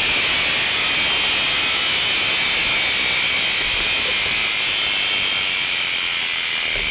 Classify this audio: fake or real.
real